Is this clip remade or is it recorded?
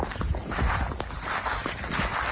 recorded